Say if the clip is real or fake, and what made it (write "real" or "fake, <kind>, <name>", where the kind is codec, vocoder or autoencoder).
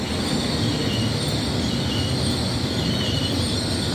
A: real